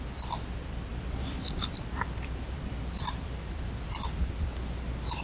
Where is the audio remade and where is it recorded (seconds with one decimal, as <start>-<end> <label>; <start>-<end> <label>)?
0.0-4.5 remade; 4.5-5.2 recorded